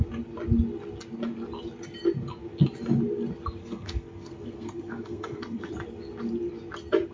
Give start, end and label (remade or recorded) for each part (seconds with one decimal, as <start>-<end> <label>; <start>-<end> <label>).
0.0-3.6 recorded; 3.6-5.7 remade; 5.7-7.1 recorded